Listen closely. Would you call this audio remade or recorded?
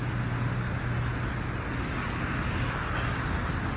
recorded